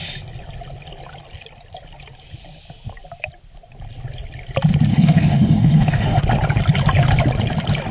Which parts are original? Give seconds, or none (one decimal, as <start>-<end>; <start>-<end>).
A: 0.0-4.9; 6.2-7.9